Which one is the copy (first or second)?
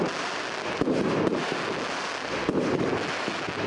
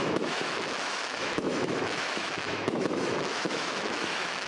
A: second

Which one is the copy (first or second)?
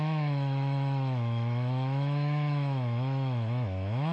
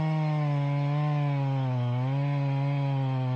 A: first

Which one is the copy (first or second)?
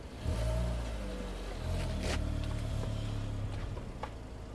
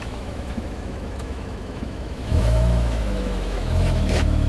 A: second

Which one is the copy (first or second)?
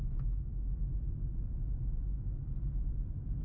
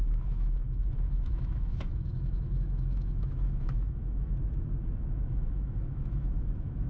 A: second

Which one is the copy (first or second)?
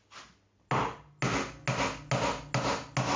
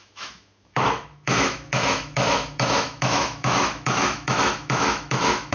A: second